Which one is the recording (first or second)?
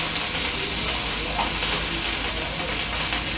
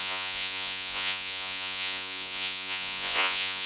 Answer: first